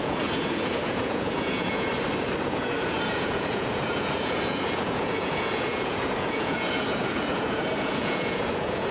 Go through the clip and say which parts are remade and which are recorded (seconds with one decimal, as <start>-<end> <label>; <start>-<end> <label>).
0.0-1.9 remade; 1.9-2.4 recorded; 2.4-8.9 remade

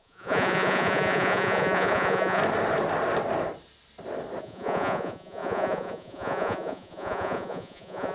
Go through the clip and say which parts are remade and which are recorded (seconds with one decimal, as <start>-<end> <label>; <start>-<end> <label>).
0.0-2.4 remade; 2.4-4.4 recorded; 4.4-8.1 remade

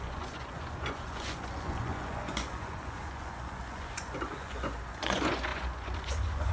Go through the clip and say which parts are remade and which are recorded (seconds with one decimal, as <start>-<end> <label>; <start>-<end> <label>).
0.0-6.5 remade